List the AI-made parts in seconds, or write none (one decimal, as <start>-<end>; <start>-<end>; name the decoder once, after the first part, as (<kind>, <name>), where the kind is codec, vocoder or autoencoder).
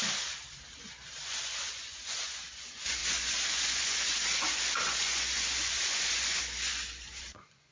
0.8-7.7 (vocoder, Vocos)